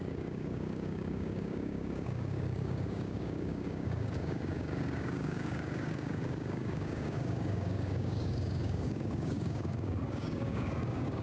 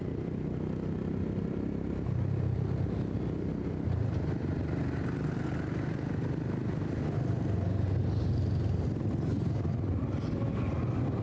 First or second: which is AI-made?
first